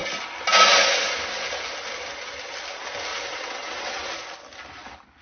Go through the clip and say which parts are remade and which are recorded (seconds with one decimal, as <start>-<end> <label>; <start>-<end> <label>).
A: 0.0-3.1 recorded; 3.1-4.1 remade; 4.1-5.2 recorded